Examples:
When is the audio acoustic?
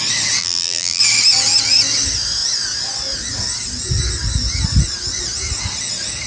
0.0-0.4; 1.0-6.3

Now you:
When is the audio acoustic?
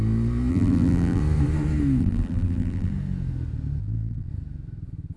0.0-0.5; 1.2-2.0; 2.9-3.8; 4.3-5.2